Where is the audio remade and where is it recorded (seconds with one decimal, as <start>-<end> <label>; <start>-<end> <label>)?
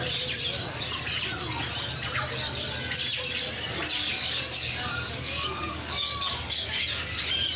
0.0-4.0 recorded; 4.0-6.8 remade; 6.8-7.6 recorded